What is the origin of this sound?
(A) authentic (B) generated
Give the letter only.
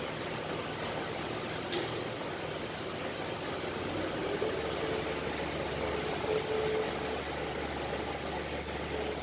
A